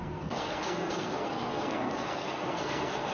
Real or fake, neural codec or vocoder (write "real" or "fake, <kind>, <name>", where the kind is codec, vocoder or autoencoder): fake, codec, SNAC